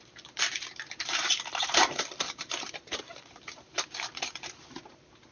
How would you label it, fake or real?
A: fake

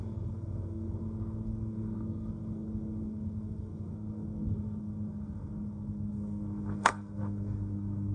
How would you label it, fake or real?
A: fake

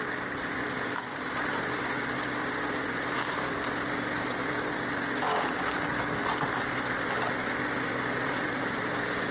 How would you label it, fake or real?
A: fake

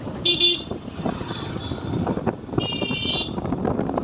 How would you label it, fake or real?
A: real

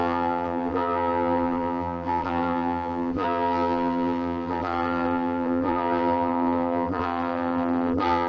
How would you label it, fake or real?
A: fake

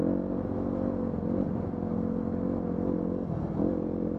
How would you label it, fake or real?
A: real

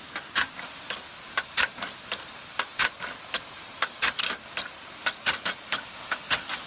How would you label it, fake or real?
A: real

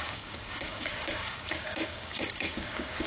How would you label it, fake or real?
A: fake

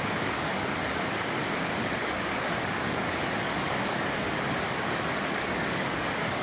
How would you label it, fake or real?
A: fake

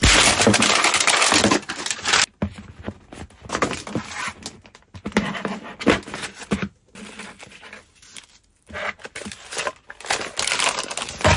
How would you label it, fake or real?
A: real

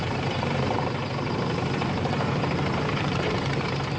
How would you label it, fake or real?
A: fake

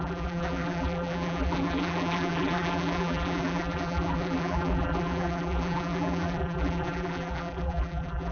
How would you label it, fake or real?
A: fake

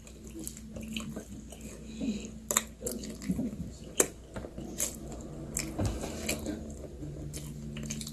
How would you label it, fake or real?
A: real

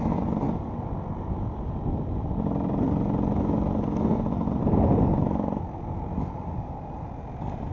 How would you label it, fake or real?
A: real